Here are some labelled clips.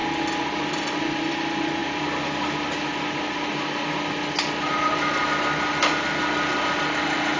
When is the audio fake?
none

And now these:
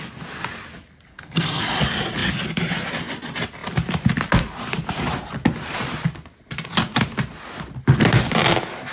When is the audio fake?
1.1-1.6

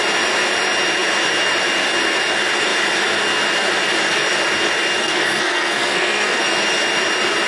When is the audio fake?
5.0-6.4

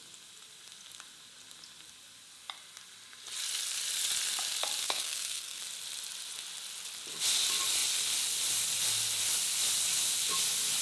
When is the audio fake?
4.8-5.6

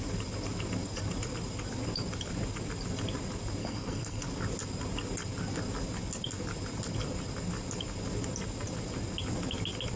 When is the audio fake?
3.6-4.2

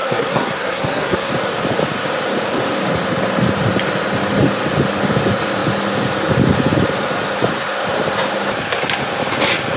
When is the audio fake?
0.0-1.3

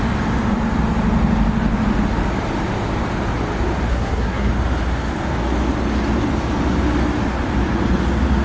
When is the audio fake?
3.9-4.5

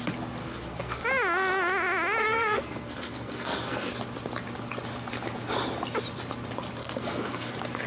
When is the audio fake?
0.4-1.0; 2.2-3.9; 6.8-7.5